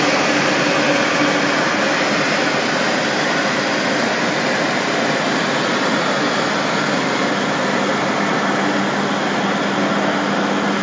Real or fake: real